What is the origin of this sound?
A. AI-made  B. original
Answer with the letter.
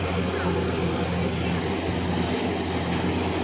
B